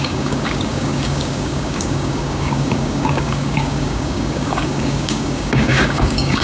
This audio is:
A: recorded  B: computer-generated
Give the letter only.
B